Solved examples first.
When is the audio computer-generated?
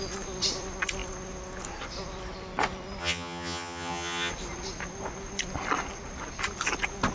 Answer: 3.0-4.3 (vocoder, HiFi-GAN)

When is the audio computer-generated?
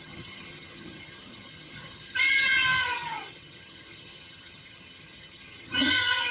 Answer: 0.0-6.3 (vocoder, HiFi-GAN)